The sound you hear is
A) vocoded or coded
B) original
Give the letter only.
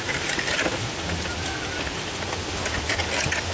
A